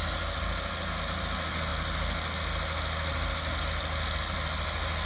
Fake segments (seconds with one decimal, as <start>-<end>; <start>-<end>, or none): none